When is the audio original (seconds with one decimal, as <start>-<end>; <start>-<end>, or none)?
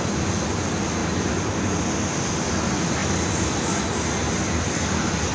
0.0-1.0; 1.8-5.3